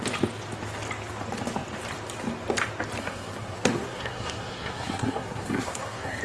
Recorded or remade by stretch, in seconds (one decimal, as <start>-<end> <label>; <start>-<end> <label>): 0.0-3.0 recorded; 3.0-6.2 remade